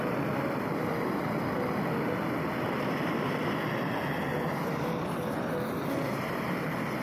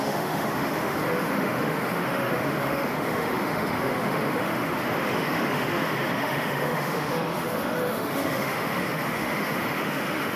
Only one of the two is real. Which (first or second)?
first